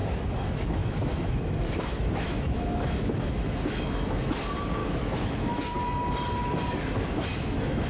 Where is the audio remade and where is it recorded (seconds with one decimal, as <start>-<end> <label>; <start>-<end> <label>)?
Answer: 0.0-4.2 remade; 4.2-4.8 recorded; 4.8-5.7 remade; 5.7-7.3 recorded; 7.3-7.9 remade